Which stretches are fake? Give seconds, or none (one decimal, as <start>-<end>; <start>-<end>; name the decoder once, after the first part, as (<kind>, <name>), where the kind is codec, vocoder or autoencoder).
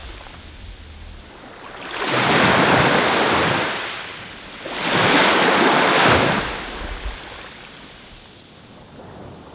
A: none